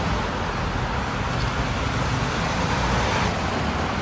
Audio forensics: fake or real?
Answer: real